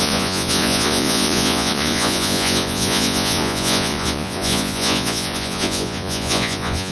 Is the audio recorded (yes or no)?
no